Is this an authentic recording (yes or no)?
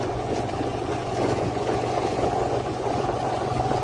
no